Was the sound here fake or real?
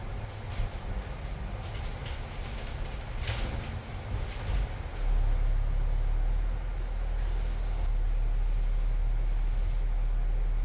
real